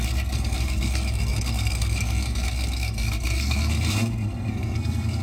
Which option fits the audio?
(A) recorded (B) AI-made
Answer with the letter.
B